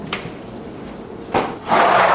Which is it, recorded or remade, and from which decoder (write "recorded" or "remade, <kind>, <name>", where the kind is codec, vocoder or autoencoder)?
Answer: recorded